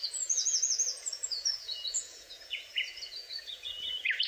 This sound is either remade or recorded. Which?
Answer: remade